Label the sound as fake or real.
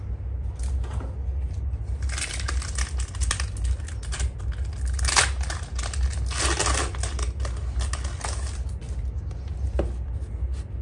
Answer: real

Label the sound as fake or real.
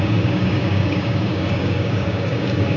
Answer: fake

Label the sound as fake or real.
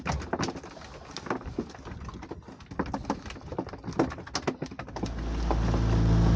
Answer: real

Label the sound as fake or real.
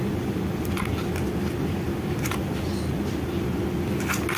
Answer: real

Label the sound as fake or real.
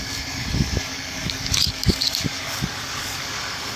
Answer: fake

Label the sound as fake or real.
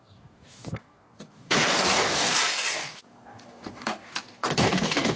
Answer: fake